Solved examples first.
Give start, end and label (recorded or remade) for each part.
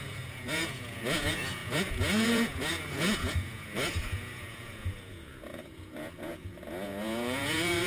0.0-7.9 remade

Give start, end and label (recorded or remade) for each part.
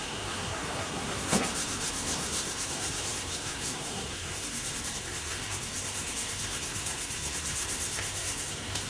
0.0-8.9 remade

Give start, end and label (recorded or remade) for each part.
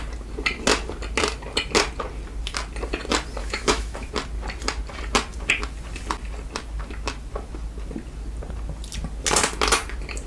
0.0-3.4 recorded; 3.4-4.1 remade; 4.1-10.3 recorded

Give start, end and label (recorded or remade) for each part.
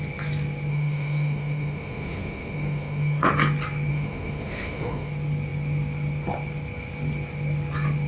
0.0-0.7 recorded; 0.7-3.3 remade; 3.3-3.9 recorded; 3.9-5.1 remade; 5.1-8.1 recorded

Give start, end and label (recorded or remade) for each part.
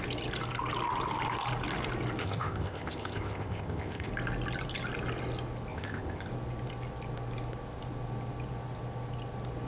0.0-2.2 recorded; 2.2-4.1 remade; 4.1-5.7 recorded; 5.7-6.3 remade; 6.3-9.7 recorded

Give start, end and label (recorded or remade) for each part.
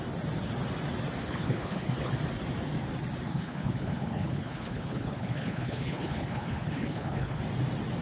0.0-1.2 recorded; 1.2-2.1 remade; 2.1-3.3 recorded; 3.3-7.4 remade; 7.4-8.0 recorded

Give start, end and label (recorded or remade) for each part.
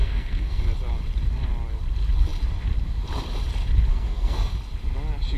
0.0-0.6 remade; 0.6-3.9 recorded; 3.9-4.5 remade; 4.5-5.4 recorded